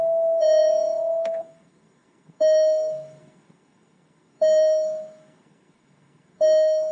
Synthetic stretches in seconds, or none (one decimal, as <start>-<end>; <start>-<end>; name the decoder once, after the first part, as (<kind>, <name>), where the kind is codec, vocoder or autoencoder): 0.0-6.9 (codec, SNAC)